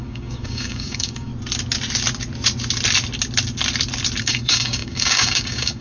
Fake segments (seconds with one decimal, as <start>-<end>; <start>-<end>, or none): 0.0-1.3; 4.2-5.8